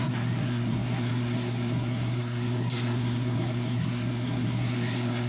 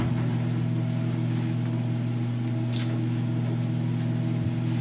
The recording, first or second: second